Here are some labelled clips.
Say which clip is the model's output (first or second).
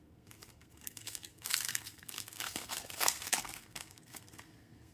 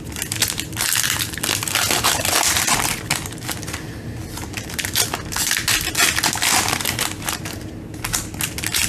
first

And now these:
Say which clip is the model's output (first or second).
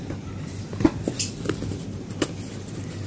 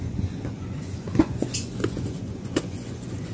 second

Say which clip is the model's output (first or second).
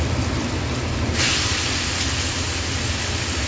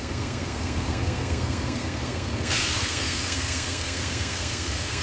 second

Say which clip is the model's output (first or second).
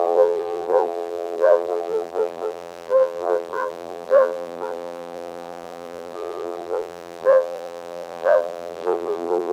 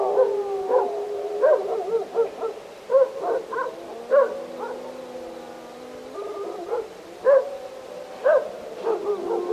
first